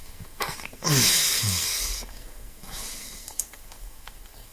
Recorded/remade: remade